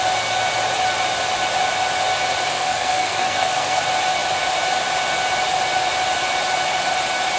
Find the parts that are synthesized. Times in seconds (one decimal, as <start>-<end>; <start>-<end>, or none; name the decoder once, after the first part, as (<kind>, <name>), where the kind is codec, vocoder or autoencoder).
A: 2.5-3.8 (codec, SNAC)